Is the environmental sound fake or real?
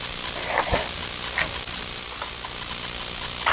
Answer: real